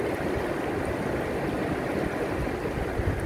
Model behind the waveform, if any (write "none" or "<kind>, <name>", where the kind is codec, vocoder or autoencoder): none